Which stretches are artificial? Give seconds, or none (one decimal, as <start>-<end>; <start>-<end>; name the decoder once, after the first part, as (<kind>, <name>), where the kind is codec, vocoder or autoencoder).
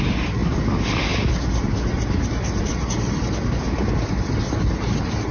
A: none